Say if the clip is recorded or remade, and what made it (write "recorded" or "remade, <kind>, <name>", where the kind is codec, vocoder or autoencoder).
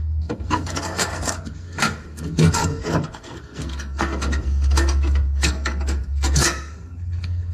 remade, codec, SNAC